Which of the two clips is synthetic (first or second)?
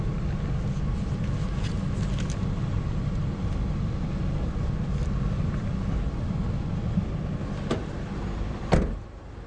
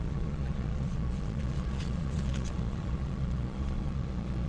second